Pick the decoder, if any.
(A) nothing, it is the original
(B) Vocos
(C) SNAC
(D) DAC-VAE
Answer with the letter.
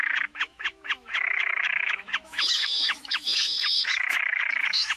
D